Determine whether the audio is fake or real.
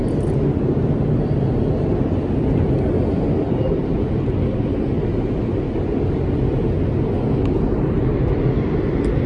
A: real